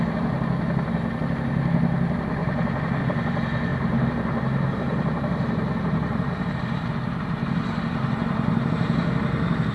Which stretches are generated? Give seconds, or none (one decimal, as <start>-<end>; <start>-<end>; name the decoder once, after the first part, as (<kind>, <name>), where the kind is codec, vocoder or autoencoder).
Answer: 2.4-3.0 (vocoder, BigVGAN v2); 3.7-8.7